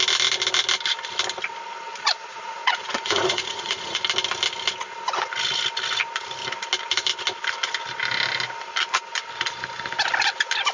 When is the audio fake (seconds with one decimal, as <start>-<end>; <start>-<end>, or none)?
1.9-4.0